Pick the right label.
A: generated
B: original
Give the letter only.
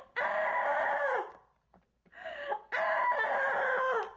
B